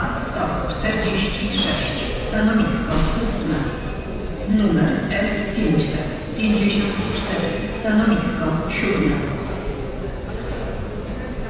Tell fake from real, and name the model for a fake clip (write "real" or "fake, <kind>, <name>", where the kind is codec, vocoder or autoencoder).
fake, vocoder, Vocos